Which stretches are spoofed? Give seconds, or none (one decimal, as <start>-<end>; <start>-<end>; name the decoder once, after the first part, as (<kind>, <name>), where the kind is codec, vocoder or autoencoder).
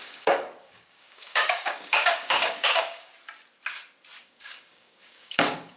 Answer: 0.0-3.1 (codec, DAC); 4.2-5.8